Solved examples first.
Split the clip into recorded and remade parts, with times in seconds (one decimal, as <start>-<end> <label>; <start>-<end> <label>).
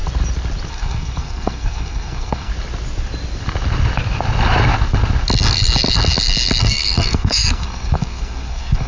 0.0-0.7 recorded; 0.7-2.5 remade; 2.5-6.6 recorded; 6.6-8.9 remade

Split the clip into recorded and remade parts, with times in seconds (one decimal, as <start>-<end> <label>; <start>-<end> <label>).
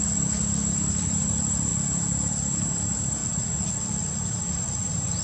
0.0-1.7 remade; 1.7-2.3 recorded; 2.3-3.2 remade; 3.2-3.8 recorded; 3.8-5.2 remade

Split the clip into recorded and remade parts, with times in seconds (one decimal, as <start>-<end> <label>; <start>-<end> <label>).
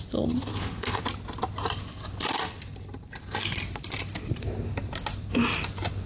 0.0-0.5 recorded; 0.5-1.0 remade; 1.0-6.1 recorded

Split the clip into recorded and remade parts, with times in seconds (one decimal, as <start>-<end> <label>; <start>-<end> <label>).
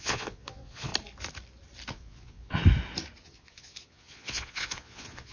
0.0-0.9 remade; 0.9-1.9 recorded; 1.9-2.6 remade; 2.6-3.2 recorded; 3.2-5.3 remade